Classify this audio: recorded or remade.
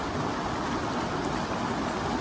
recorded